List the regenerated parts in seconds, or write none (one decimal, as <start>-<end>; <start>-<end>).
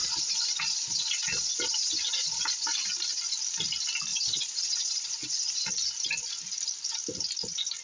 0.0-2.9; 4.1-5.7